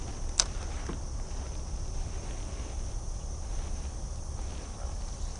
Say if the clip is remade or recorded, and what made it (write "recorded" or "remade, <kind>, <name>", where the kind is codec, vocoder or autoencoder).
recorded